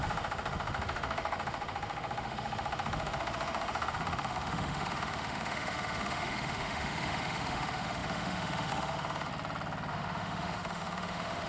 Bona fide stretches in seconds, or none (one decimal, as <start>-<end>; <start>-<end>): 9.3-9.9